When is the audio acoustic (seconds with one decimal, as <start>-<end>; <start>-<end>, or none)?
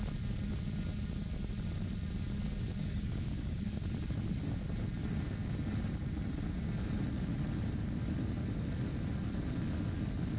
0.0-2.8; 3.8-10.4